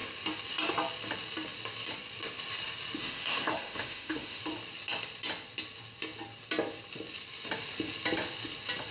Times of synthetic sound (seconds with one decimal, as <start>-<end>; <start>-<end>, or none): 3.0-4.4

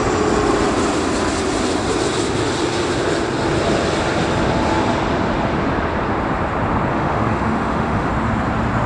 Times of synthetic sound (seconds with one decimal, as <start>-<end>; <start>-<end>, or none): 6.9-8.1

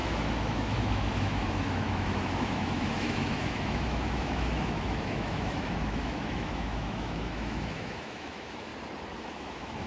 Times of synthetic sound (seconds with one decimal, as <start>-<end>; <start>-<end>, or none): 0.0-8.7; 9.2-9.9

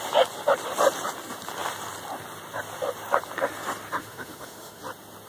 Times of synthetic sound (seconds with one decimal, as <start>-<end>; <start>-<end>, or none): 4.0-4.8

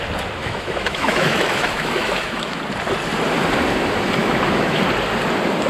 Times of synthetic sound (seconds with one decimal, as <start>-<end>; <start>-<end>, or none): 0.4-2.6; 4.2-4.8

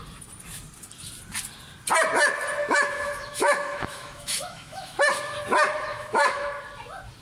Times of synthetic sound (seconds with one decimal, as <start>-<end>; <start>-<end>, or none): 2.6-4.9; 5.9-6.6

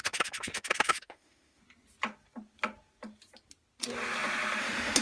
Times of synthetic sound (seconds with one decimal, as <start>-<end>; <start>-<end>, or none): 0.0-1.6; 4.6-5.0

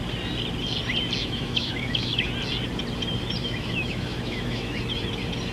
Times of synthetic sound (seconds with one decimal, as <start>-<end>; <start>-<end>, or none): 1.2-2.3; 3.4-4.8